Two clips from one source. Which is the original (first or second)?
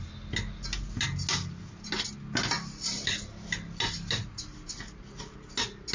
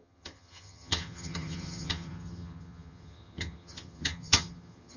first